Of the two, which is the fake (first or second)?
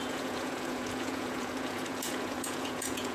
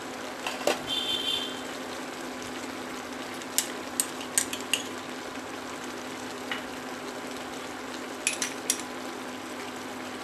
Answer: first